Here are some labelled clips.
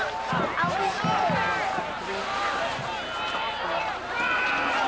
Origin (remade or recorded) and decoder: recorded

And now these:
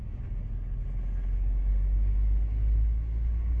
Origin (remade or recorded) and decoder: recorded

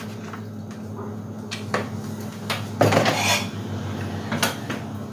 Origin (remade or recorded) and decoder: recorded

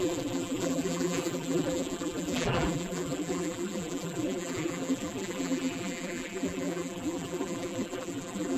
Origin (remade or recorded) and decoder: remade, vocoder, BigVGAN v2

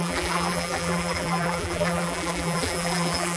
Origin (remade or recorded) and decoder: remade, vocoder, BigVGAN v2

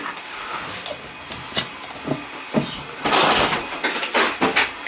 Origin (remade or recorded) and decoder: recorded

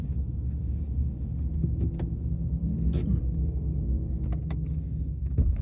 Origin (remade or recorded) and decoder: recorded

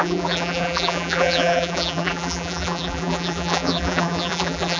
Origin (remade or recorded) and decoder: remade, vocoder, BigVGAN v2